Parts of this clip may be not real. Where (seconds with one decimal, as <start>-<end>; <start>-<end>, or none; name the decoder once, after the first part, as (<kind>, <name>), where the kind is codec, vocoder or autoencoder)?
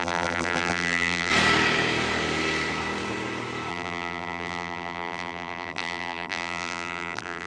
0.0-1.3 (vocoder, BigVGAN v2); 3.7-7.5